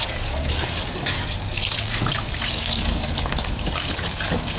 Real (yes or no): no